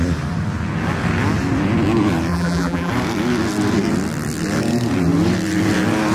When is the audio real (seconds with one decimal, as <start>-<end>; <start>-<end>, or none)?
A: 0.0-2.3; 2.9-6.1